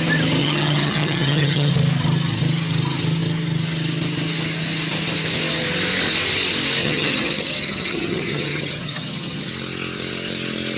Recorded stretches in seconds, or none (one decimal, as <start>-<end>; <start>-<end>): 0.0-0.4; 1.7-6.8; 9.5-10.8